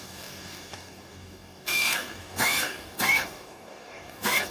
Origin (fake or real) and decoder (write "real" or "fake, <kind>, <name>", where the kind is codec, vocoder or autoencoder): fake, codec, DAC